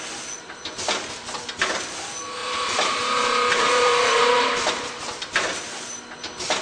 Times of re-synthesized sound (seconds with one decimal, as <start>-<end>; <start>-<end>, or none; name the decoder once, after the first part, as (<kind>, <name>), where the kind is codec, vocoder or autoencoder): 2.4-4.7 (vocoder, BigVGAN v2)

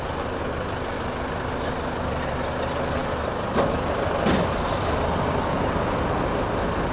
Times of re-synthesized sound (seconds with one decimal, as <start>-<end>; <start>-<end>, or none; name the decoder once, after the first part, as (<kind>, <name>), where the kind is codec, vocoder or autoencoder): none

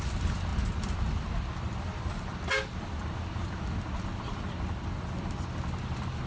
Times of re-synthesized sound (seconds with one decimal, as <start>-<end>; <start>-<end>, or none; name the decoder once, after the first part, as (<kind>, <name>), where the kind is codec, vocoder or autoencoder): none